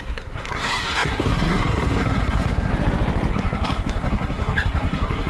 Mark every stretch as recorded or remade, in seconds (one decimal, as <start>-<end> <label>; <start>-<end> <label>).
0.0-2.7 remade; 2.7-3.3 recorded; 3.3-5.3 remade